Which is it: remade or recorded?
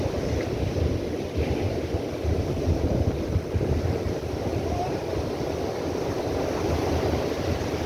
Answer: recorded